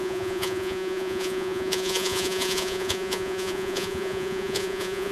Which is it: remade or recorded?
remade